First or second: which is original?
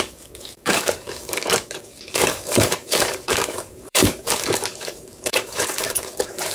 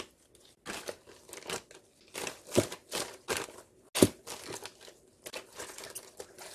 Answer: second